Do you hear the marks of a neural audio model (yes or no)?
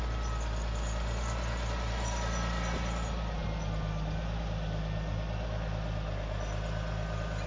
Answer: no